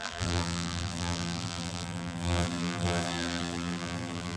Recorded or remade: remade